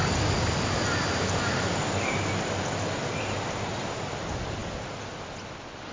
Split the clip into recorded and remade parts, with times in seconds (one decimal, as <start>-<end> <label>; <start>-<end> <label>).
0.0-5.9 recorded